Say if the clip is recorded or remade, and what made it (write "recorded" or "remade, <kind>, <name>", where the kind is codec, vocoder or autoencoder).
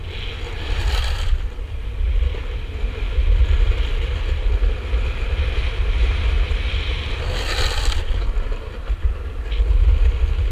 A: recorded